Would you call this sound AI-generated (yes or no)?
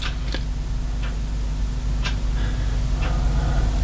no